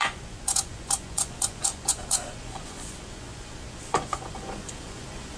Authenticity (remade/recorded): remade